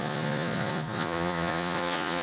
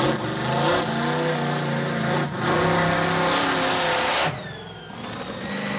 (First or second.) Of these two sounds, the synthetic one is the first